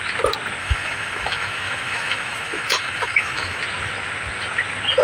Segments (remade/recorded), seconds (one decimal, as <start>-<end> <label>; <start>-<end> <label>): 0.0-0.6 recorded; 0.6-3.6 remade; 3.6-5.0 recorded